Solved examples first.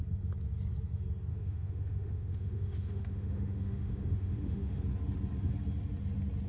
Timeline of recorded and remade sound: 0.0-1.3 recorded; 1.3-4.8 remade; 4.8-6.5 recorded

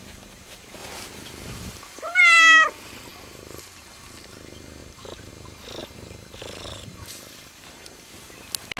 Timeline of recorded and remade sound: 0.0-4.8 recorded; 4.8-5.3 remade; 5.3-5.8 recorded; 5.8-8.4 remade; 8.4-8.8 recorded

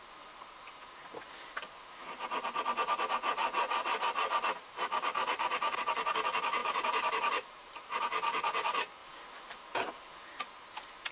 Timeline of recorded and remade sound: 0.0-3.4 recorded; 3.4-6.1 remade; 6.1-6.6 recorded; 6.6-8.0 remade; 8.0-9.0 recorded; 9.0-10.4 remade; 10.4-11.1 recorded

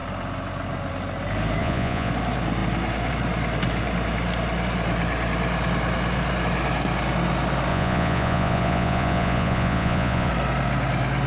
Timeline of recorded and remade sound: 0.0-1.6 recorded; 1.6-2.1 remade; 2.1-7.7 recorded; 7.7-10.3 remade; 10.3-11.3 recorded

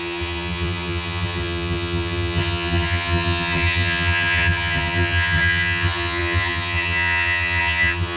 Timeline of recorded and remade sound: 0.0-8.2 remade